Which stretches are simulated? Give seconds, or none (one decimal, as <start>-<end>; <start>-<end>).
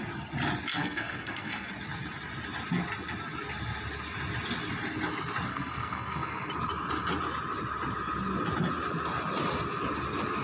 0.7-1.7; 5.5-6.5